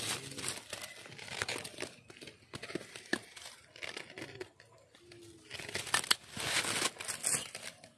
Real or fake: real